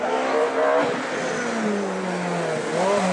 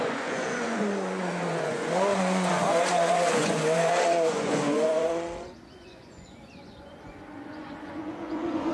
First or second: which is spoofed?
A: second